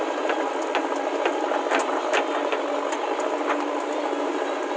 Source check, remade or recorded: recorded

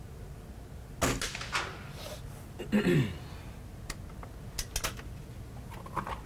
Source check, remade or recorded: recorded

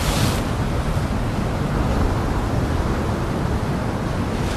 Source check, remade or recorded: recorded